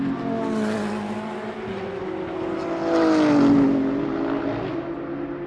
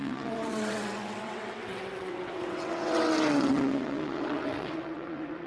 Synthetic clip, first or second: second